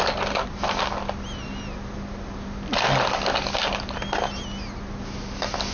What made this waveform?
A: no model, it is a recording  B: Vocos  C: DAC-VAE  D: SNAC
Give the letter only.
A